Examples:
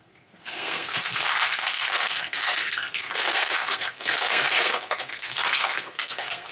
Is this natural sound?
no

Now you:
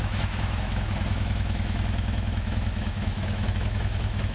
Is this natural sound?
no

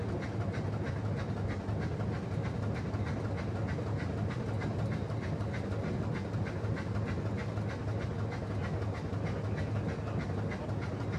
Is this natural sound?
yes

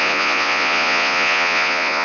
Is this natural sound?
no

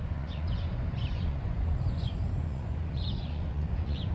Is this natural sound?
no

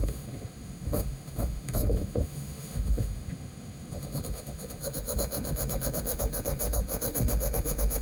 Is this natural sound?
no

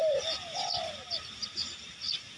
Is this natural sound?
yes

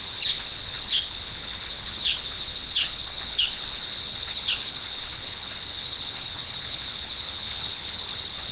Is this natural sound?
no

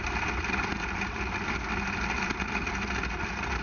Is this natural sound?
yes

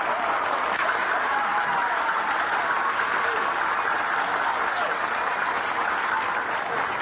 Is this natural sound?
yes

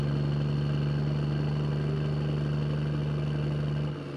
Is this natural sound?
yes